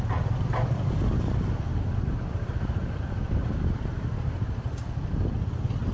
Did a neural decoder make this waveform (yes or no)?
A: no